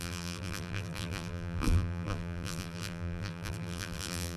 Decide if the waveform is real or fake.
fake